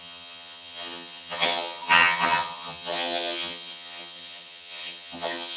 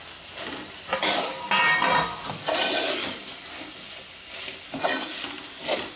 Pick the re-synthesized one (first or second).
first